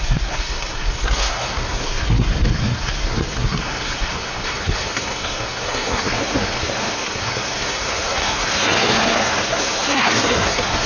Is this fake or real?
fake